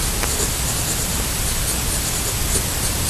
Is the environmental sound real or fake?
fake